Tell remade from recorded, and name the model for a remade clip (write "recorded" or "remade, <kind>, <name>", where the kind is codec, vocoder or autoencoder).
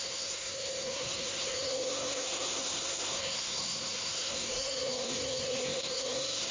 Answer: remade, codec, SNAC